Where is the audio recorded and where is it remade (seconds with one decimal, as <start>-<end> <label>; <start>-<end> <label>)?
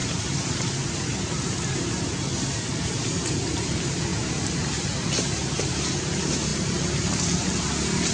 0.0-8.1 recorded